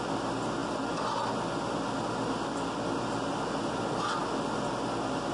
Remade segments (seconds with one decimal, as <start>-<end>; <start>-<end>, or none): none